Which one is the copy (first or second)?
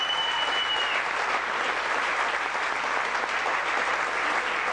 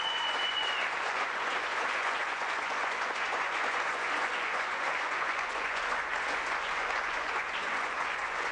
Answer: second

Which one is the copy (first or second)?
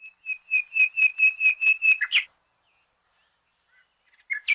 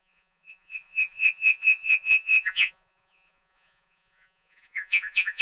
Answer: second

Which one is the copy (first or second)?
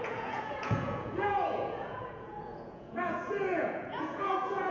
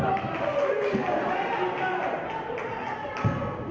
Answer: first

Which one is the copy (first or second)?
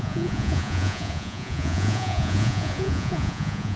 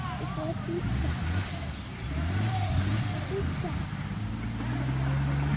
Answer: first